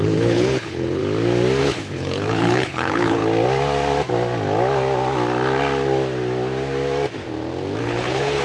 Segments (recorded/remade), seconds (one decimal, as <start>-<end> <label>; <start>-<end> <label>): 0.0-1.0 remade; 1.0-1.6 recorded; 1.6-3.2 remade; 3.2-7.8 recorded; 7.8-8.4 remade

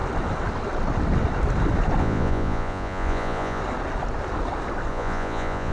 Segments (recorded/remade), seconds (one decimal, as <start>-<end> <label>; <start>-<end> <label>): 0.0-2.0 recorded; 2.0-3.6 remade; 3.6-4.9 recorded; 4.9-5.7 remade

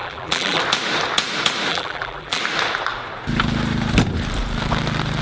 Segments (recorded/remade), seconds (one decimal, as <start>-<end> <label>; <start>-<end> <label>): 0.0-0.6 remade; 0.6-1.7 recorded; 1.7-2.4 remade; 2.4-5.2 recorded